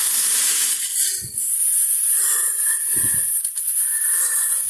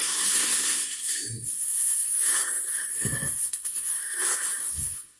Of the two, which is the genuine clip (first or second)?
first